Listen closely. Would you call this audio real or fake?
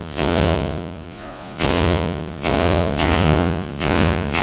fake